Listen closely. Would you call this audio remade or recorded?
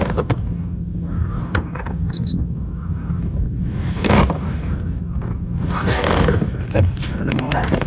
remade